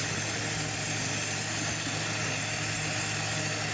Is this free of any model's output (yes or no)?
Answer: yes